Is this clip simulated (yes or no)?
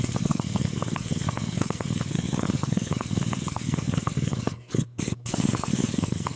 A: yes